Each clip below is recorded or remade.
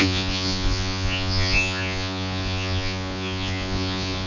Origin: remade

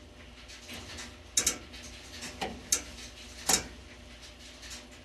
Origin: recorded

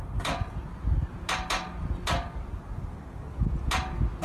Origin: recorded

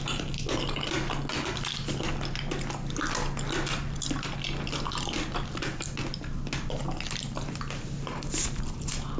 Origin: recorded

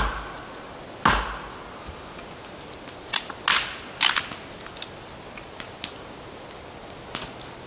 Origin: recorded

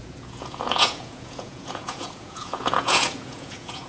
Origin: remade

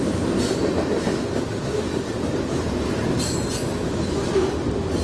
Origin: recorded